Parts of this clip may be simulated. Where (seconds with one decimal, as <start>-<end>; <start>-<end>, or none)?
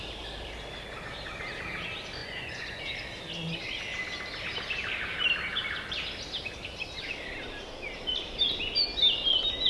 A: 2.2-2.8